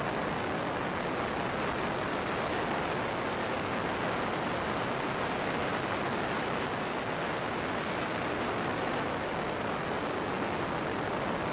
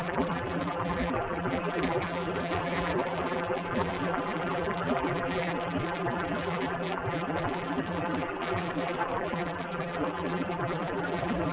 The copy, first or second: second